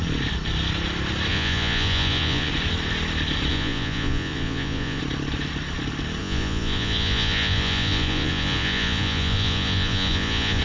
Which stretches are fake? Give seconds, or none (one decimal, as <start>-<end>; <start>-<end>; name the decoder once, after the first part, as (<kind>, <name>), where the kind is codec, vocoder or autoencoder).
1.3-2.5 (vocoder, Vocos); 3.5-5.0; 6.2-10.6